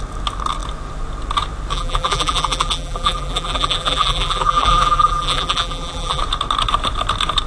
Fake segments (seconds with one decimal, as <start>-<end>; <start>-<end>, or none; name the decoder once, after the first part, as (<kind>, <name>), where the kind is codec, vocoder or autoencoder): 1.7-6.2 (vocoder, BigVGAN v2)